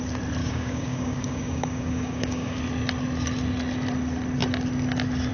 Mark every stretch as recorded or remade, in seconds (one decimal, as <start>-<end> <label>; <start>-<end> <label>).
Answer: 0.0-0.4 recorded; 0.4-2.6 remade; 2.6-5.3 recorded